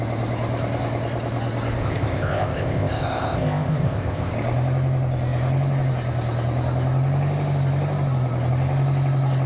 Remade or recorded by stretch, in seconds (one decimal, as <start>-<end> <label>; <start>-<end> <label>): 0.0-1.8 recorded; 1.8-4.3 remade; 4.3-9.5 recorded

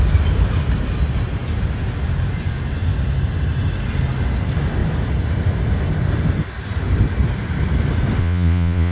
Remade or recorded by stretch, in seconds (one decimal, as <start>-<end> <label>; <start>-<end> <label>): 0.0-8.2 recorded; 8.2-8.9 remade

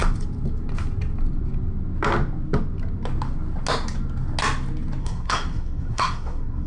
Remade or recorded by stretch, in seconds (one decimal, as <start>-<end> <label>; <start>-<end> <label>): 0.0-5.0 recorded; 5.0-6.7 remade

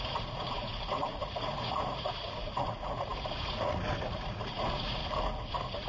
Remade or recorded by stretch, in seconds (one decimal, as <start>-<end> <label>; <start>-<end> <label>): 0.0-5.0 remade; 5.0-5.5 recorded; 5.5-5.9 remade